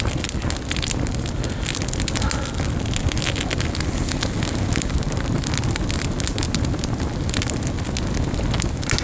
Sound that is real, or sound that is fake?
real